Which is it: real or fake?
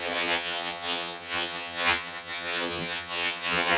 fake